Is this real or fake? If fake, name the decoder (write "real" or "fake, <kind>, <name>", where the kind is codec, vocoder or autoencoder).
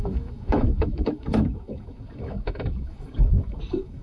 fake, autoencoder, DAC-VAE